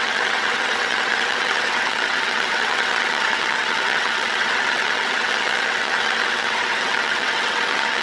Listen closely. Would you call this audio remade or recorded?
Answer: remade